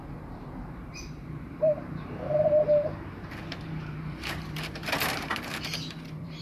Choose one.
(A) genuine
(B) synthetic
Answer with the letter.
B